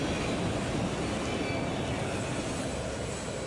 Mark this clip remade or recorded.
recorded